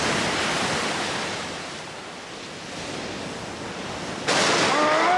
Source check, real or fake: real